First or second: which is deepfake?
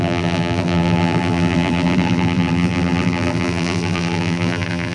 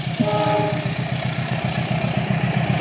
first